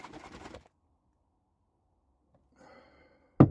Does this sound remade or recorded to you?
recorded